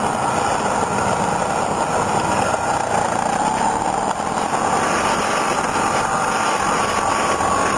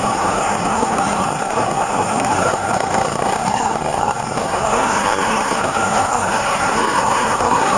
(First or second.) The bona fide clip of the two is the first